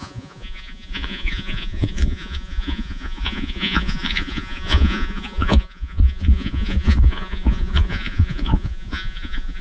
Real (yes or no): no